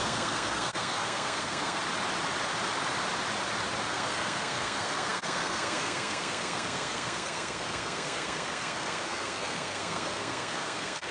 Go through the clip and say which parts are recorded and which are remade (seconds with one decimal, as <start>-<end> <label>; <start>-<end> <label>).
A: 0.0-1.8 remade; 1.8-3.9 recorded; 3.9-11.1 remade